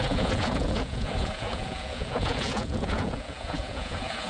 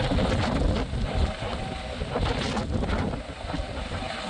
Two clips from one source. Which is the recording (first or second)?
second